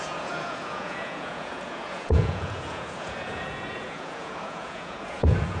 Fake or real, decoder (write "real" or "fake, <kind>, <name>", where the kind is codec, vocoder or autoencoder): fake, vocoder, Vocos